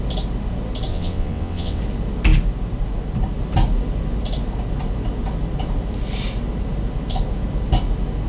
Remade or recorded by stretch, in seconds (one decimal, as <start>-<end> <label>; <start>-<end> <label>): 0.0-0.9 recorded; 0.9-1.8 remade; 1.8-8.3 recorded